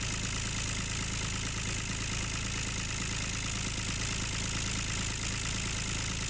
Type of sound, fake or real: real